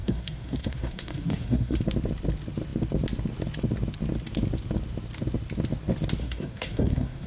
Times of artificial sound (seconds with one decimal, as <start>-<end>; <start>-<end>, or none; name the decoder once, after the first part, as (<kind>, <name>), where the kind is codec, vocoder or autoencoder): 0.0-1.8 (codec, SNAC); 6.2-7.3